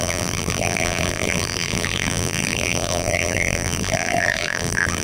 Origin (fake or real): fake